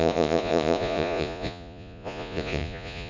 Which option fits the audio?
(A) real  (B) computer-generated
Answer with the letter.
B